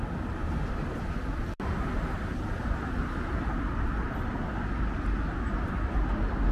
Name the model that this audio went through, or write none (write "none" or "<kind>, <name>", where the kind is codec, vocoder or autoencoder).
none